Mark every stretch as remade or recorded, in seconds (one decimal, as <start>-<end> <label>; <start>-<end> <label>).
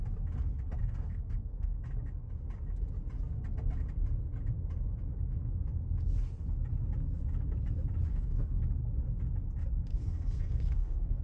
0.0-0.8 recorded; 0.8-1.8 remade; 1.8-8.1 recorded; 8.1-8.6 remade; 8.6-9.9 recorded; 9.9-11.2 remade